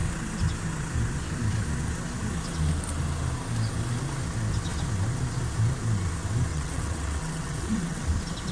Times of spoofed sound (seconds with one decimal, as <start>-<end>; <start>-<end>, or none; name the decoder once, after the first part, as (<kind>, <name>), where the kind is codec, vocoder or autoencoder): 6.5-8.1 (vocoder, WaveNeXt)